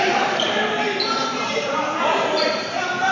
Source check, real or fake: fake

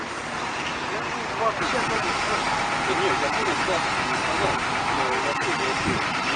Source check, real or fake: real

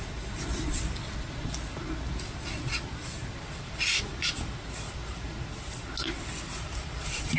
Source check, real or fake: real